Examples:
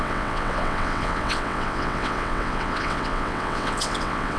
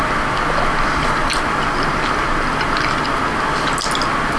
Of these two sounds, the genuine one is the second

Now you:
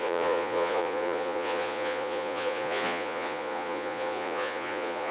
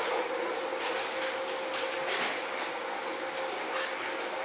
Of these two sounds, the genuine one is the second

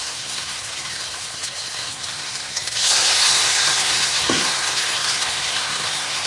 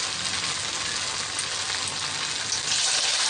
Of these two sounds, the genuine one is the second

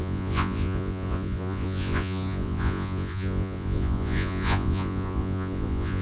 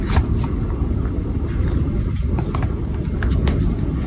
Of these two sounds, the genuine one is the second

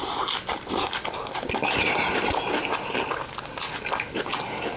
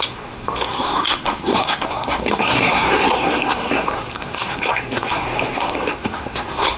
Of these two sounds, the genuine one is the first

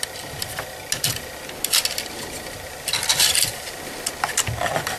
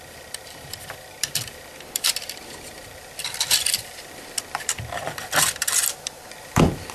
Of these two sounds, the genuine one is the first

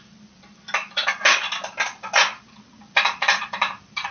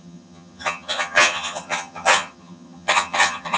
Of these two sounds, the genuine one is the first